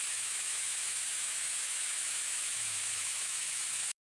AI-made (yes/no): yes